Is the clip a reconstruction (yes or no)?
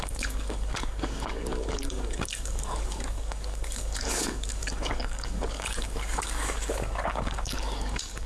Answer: yes